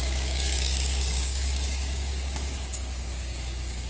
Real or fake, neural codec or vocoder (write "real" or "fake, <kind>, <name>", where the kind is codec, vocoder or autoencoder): fake, codec, DAC